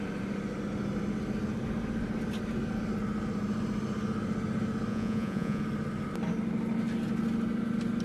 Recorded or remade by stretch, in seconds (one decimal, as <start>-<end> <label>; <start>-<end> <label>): 0.0-4.9 recorded; 4.9-5.6 remade; 5.6-8.0 recorded